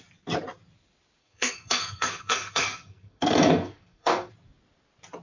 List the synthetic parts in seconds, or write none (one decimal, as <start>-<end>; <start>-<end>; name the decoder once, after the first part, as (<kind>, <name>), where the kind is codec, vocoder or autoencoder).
1.2-4.3 (codec, SNAC)

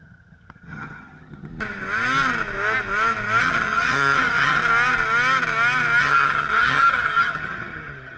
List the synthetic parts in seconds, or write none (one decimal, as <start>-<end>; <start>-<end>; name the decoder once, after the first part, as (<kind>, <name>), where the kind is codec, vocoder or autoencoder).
0.0-1.5 (vocoder, HiFi-GAN); 3.4-4.6; 6.0-8.2

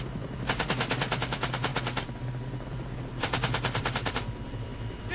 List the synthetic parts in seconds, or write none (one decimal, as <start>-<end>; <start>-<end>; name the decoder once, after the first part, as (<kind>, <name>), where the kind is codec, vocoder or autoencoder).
1.7-5.1 (vocoder, BigVGAN v2)

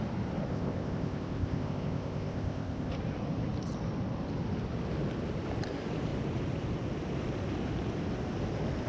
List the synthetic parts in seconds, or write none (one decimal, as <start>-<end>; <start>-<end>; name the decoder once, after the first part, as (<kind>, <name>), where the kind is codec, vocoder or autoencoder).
0.5-2.9 (codec, ZipCodec)

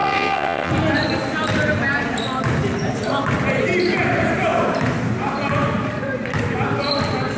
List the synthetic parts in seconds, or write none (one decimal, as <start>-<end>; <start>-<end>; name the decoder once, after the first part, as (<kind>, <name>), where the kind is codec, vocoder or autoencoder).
0.0-0.7 (vocoder, WaveNeXt)

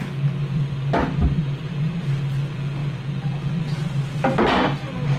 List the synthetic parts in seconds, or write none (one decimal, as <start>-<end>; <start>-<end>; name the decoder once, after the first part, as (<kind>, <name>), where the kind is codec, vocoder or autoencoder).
none